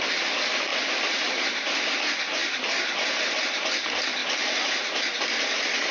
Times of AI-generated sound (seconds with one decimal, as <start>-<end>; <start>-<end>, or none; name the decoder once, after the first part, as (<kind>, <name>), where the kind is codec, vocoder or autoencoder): 0.7-1.9 (vocoder, BigVGAN v2); 2.4-3.6